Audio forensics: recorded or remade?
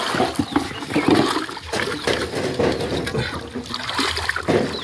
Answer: recorded